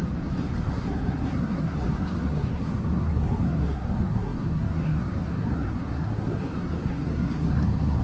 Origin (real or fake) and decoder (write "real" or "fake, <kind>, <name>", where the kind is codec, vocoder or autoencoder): fake, codec, SNAC